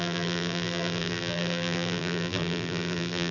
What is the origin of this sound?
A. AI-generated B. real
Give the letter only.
A